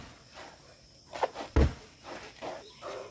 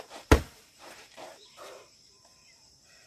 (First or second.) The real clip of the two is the first